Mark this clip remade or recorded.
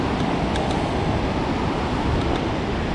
recorded